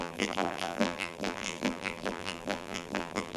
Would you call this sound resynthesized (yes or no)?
yes